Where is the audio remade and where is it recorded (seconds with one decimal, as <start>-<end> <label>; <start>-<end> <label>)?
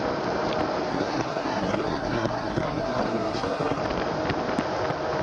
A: 0.0-0.9 recorded; 0.9-3.8 remade; 3.8-5.2 recorded